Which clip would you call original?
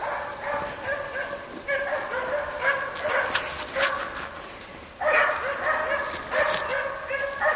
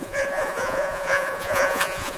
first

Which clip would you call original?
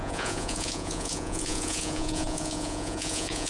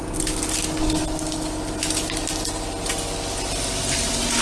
second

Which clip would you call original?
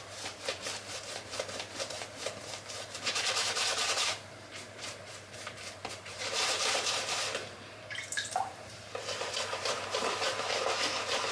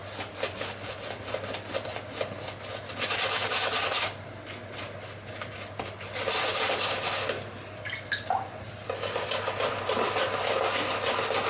second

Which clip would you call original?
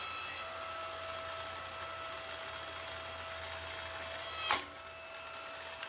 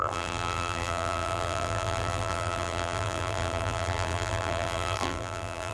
first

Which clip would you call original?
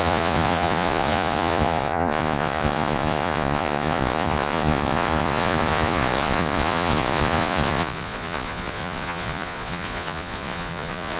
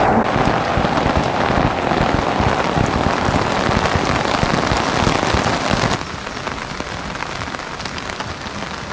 second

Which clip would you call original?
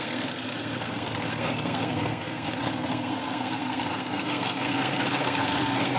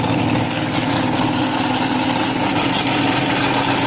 second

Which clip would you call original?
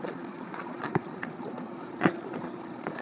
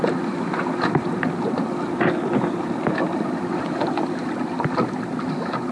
second